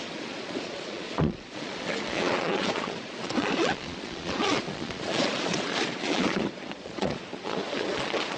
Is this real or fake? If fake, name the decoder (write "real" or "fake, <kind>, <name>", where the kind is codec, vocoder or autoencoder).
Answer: fake, vocoder, Vocos